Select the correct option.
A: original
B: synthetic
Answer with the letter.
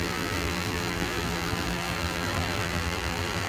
B